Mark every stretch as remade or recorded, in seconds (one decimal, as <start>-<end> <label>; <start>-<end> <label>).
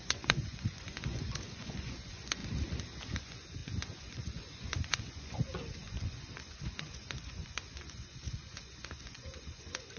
0.0-2.4 remade; 2.4-3.1 recorded; 3.1-10.0 remade